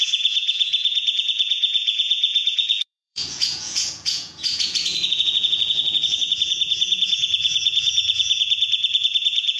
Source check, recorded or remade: remade